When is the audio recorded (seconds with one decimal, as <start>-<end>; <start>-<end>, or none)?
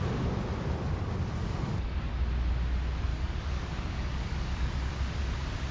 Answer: 0.0-1.4; 2.1-3.1; 4.9-5.7